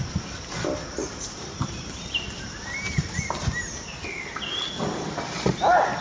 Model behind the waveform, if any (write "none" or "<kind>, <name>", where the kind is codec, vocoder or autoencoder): none